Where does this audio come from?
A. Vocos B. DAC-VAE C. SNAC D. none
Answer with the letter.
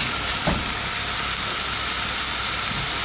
D